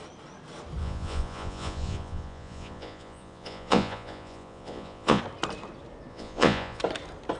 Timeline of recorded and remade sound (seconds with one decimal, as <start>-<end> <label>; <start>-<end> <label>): 0.0-0.8 recorded; 0.8-5.2 remade; 5.2-6.1 recorded; 6.1-6.8 remade; 6.8-7.4 recorded